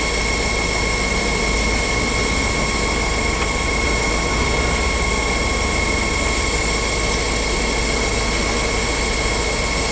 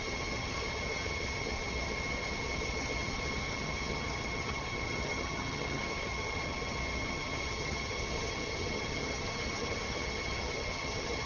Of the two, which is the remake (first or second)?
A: second